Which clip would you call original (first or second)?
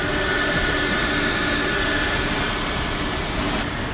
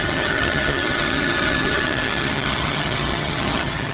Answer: first